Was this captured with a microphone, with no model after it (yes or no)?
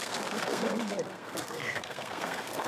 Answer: no